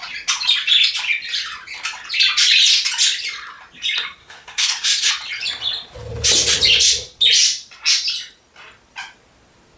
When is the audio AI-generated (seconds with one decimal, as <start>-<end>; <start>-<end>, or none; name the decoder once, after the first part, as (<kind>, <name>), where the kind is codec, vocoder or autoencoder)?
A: 4.2-5.1 (codec, SNAC)